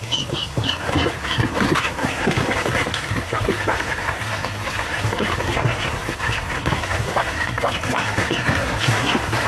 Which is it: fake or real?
fake